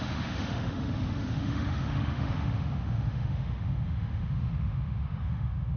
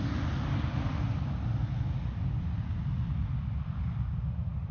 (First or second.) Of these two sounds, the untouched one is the second